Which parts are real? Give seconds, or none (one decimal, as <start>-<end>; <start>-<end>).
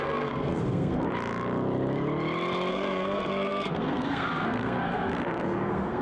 1.1-2.7